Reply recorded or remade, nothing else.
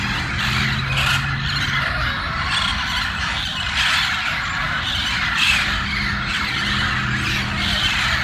recorded